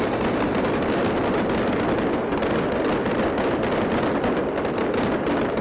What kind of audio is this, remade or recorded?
recorded